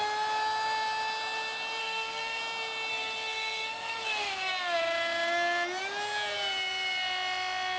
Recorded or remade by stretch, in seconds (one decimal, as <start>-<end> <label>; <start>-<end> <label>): 0.0-1.8 recorded; 1.8-2.4 remade; 2.4-2.9 recorded; 2.9-4.5 remade; 4.5-7.8 recorded